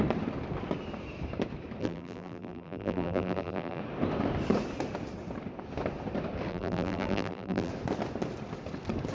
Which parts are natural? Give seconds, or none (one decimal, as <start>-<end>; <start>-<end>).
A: 0.0-1.8; 3.8-6.5; 7.7-9.1